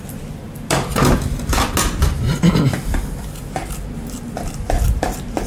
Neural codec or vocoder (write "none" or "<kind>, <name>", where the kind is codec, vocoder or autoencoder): none